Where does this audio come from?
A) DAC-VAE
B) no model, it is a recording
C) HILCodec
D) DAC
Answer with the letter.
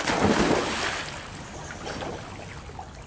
B